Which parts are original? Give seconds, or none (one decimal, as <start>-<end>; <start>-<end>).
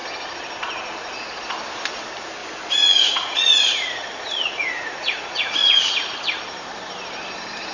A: 0.0-2.4; 5.8-7.7